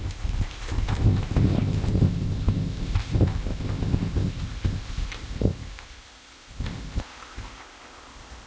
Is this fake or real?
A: fake